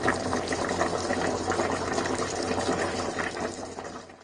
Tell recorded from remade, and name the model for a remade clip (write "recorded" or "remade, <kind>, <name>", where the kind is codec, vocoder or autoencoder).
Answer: recorded